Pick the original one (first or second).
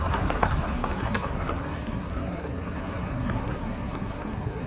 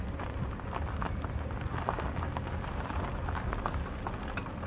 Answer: second